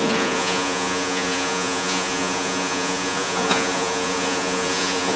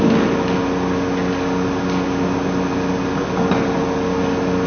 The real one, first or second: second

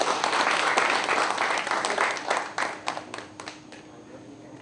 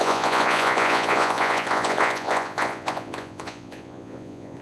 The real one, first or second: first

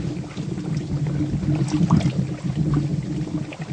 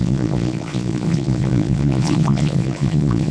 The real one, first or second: first